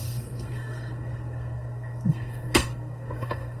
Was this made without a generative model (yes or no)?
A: no